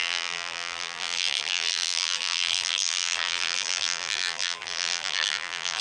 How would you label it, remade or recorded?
remade